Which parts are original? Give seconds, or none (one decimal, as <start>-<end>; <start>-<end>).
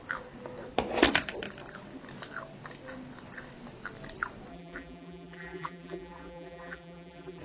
0.0-4.5